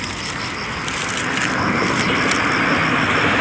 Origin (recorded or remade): recorded